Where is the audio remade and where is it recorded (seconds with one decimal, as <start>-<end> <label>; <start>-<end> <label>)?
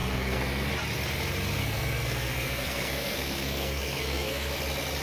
0.0-0.7 remade; 0.7-1.6 recorded; 1.6-4.6 remade; 4.6-5.0 recorded